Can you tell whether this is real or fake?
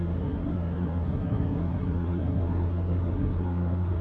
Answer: fake